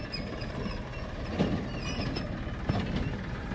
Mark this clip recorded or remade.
recorded